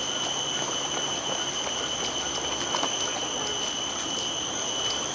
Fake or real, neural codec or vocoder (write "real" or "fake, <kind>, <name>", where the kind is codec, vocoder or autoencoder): real